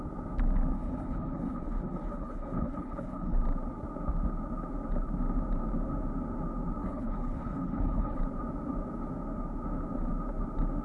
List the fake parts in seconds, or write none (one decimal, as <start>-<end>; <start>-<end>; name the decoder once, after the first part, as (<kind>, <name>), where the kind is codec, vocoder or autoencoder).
0.7-3.4 (codec, HILCodec); 6.8-8.2